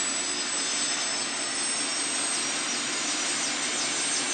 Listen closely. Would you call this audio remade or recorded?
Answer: recorded